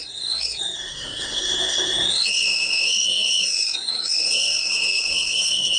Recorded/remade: remade